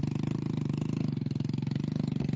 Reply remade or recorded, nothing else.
recorded